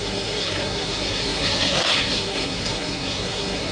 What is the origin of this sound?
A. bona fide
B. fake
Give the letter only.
B